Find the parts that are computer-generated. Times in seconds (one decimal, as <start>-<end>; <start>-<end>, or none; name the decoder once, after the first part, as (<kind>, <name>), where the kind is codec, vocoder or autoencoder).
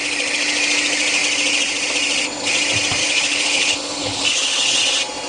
3.0-4.8 (codec, HILCodec)